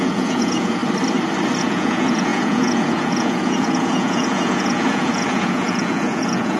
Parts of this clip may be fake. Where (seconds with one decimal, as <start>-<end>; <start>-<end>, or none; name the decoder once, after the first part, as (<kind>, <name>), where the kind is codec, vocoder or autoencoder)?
0.0-0.8 (vocoder, Vocos); 1.6-6.6

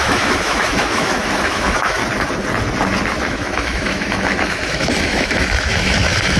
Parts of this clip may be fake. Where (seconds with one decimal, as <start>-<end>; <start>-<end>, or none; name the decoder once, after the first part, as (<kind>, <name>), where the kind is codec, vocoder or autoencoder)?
0.0-2.0 (autoencoder, DAC-VAE); 3.2-6.4